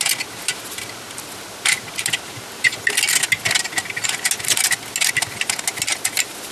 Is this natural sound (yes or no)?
yes